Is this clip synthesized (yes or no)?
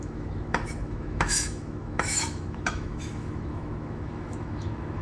yes